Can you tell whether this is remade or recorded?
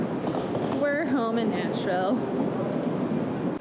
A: recorded